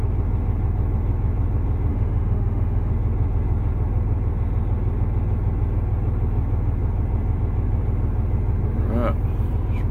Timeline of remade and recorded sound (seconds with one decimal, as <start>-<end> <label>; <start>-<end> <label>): 0.0-1.9 recorded; 1.9-2.9 remade; 2.9-9.9 recorded